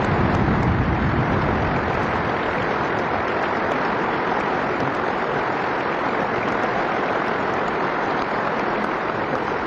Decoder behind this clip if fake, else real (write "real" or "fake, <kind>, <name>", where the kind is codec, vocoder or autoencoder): real